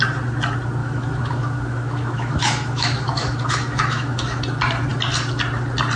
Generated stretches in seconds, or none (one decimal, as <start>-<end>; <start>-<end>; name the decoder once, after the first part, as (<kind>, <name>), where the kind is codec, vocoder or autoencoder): 0.8-4.4 (autoencoder, DAC-VAE)